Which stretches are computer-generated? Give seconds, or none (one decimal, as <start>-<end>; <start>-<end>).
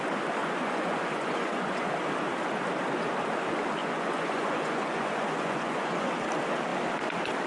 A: 0.4-1.9; 3.8-6.1